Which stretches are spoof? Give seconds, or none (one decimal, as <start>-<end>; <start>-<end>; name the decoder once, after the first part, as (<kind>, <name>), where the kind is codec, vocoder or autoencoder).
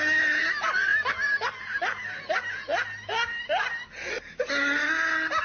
none